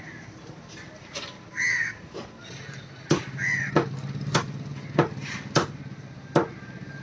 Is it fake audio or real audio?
real